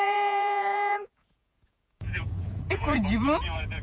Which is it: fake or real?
fake